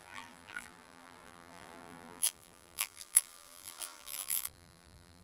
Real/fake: fake